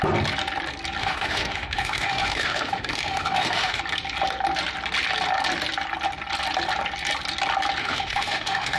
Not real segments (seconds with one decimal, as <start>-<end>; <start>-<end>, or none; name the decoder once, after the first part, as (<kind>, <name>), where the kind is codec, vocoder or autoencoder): 1.0-3.8 (autoencoder, DAC-VAE); 7.8-8.8